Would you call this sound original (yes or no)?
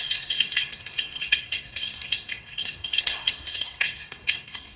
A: no